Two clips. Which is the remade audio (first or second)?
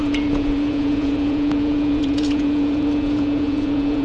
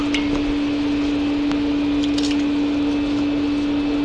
first